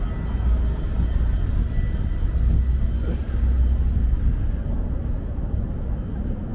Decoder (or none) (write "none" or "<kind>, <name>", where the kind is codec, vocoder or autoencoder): none